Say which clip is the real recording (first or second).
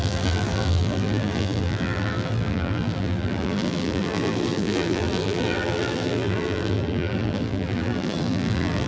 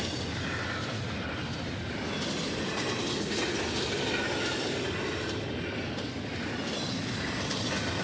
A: second